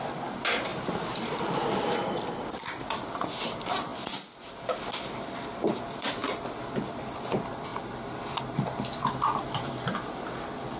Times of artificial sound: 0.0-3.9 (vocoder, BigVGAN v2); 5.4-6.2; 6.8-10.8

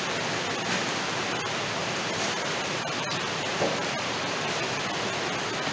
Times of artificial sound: 1.8-4.8 (vocoder, BigVGAN v2)

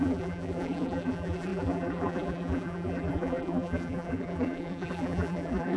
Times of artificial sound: 0.0-5.8 (vocoder, BigVGAN v2)